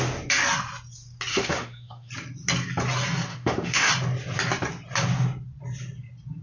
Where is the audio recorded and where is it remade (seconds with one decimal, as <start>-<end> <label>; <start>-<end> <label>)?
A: 0.0-1.3 recorded; 1.3-2.1 remade; 2.1-3.3 recorded; 3.3-3.9 remade; 3.9-6.4 recorded